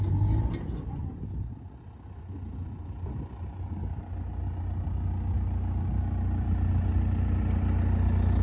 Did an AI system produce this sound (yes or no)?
no